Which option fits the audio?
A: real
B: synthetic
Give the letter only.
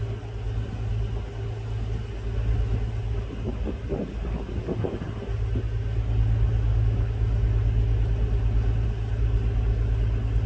A